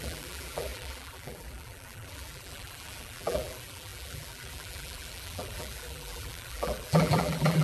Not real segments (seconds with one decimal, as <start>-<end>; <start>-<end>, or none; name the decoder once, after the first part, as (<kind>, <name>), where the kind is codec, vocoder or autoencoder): 0.0-7.6 (vocoder, BigVGAN v2)